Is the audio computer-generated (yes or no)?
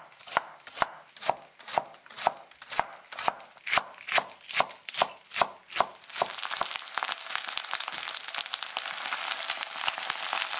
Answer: no